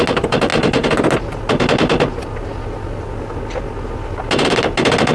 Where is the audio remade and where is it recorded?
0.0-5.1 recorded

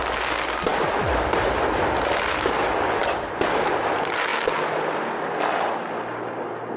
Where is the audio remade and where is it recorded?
0.0-6.8 recorded

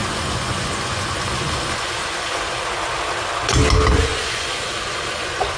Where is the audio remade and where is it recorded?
0.0-2.6 remade; 2.6-4.1 recorded; 4.1-5.6 remade

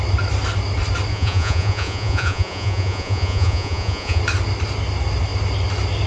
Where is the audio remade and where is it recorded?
0.0-1.1 recorded; 1.1-4.2 remade; 4.2-6.1 recorded

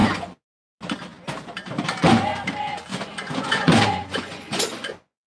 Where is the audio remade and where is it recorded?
0.0-0.8 remade; 0.8-2.9 recorded; 2.9-5.3 remade